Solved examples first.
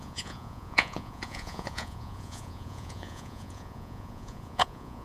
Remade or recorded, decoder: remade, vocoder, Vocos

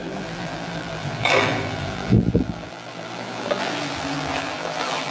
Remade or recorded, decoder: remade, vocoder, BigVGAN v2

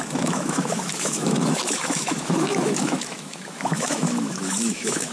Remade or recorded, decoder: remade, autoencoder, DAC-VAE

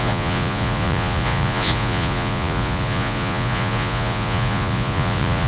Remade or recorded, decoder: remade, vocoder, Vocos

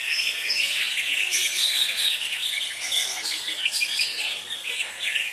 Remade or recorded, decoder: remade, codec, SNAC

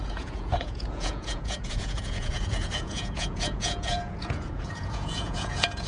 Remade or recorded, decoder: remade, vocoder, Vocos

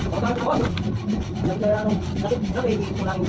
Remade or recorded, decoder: recorded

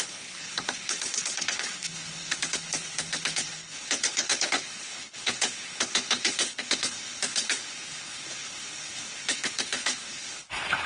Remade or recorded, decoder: remade, codec, HILCodec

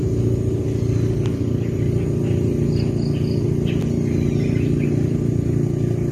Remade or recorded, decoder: recorded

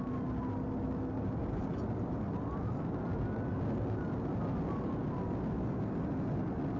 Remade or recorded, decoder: recorded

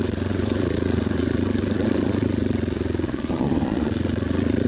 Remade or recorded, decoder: remade, vocoder, Vocos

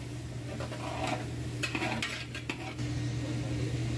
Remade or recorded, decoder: recorded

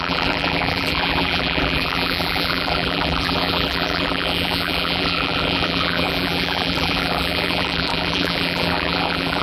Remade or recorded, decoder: remade, vocoder, BigVGAN v2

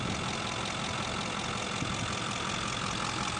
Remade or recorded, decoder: recorded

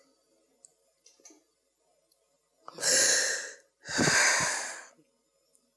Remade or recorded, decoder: recorded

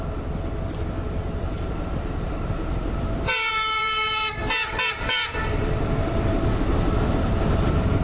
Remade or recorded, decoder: remade, vocoder, BigVGAN v2